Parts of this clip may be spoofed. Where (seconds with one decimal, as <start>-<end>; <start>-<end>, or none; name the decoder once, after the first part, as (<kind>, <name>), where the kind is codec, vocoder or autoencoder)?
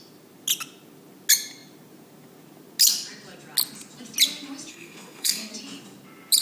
4.7-5.5 (codec, SNAC)